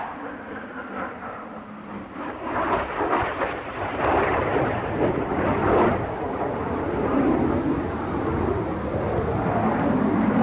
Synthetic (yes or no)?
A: no